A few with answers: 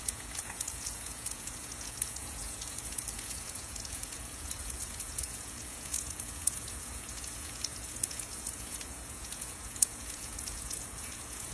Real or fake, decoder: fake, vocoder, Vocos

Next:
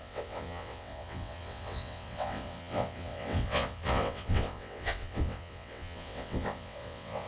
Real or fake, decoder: fake, vocoder, WaveNeXt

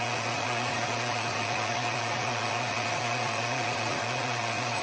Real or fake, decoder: fake, vocoder, Vocos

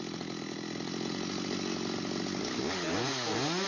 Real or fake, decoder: real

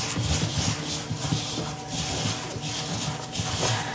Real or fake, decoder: real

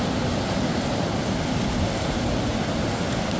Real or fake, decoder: real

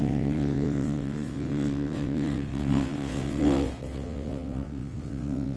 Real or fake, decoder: fake, vocoder, WaveNeXt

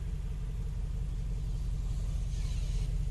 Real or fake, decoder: real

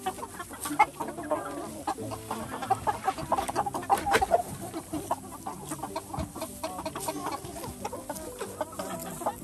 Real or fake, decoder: real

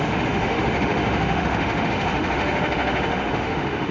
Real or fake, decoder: fake, autoencoder, DAC-VAE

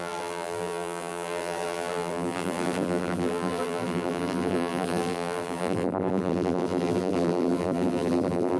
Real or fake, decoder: fake, vocoder, BigVGAN v2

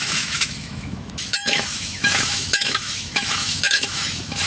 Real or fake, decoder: fake, autoencoder, DAC-VAE